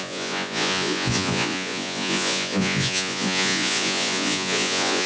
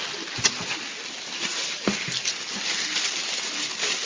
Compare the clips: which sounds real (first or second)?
second